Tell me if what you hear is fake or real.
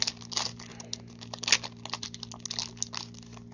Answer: real